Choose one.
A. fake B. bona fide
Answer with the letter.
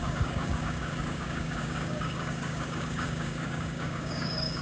A